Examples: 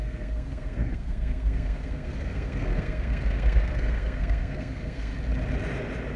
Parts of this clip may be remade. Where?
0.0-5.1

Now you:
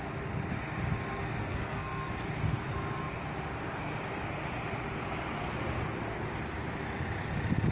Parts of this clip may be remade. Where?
1.4-2.1